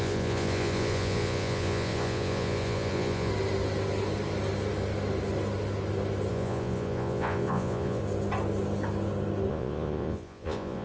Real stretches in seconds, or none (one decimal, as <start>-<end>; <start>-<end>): 3.3-6.3; 8.0-9.5